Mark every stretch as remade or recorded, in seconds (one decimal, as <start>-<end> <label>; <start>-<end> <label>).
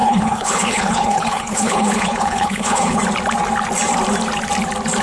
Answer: 0.0-3.0 remade; 3.0-5.0 recorded